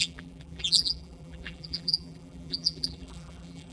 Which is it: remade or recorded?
remade